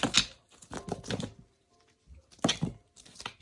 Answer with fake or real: real